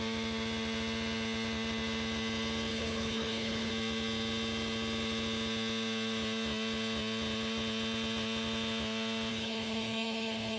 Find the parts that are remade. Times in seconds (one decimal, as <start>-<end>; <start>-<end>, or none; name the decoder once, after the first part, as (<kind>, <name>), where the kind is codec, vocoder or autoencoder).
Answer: 2.7-3.7 (codec, HILCodec); 9.3-10.6